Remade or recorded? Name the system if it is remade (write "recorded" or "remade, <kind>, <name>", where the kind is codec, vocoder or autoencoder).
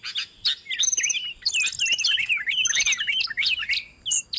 recorded